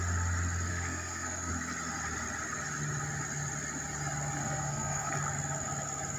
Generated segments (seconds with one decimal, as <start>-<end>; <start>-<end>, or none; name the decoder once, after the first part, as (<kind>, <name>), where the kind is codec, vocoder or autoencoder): 0.7-1.5 (codec, SNAC); 4.4-5.1